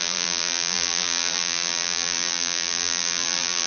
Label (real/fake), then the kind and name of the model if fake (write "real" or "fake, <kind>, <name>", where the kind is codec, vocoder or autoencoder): fake, vocoder, BigVGAN v2